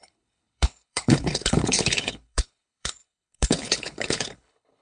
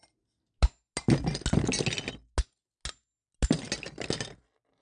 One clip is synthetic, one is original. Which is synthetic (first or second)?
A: first